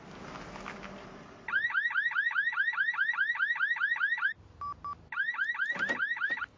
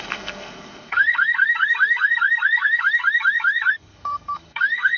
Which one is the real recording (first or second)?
first